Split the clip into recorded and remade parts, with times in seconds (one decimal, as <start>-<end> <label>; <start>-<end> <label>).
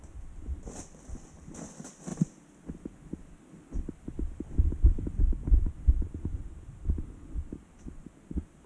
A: 0.0-8.7 recorded